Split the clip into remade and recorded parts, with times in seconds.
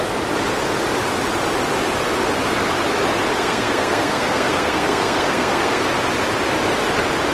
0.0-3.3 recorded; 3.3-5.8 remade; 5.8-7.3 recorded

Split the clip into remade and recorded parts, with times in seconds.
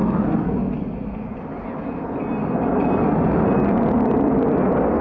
0.0-5.0 recorded